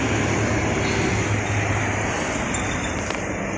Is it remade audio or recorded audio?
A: recorded